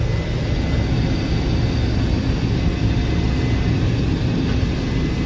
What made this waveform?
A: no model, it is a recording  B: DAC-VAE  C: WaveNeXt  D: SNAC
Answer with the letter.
A